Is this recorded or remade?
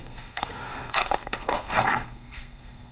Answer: remade